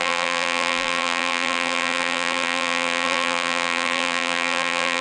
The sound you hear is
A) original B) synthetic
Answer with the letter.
B